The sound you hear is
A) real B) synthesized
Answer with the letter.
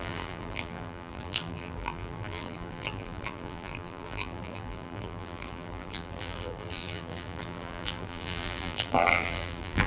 B